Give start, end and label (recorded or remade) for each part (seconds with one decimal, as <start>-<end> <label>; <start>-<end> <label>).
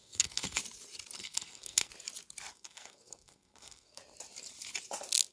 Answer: 0.0-0.6 remade; 0.6-1.2 recorded; 1.2-1.9 remade; 1.9-2.5 recorded; 2.5-4.0 remade; 4.0-5.3 recorded